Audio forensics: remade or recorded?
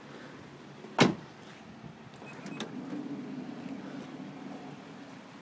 recorded